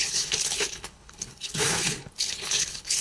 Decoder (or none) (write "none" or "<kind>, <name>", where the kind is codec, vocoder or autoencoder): codec, HILCodec